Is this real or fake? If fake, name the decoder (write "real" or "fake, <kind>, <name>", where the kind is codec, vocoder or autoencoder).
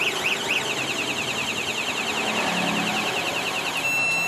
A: real